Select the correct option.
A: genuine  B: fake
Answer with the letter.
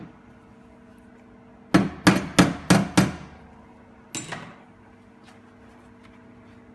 A